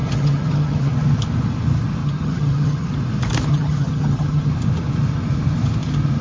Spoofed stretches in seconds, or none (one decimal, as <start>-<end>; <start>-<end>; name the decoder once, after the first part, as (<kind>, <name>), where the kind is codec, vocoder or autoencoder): 0.0-0.9 (vocoder, HiFi-GAN); 2.0-2.9; 3.5-4.5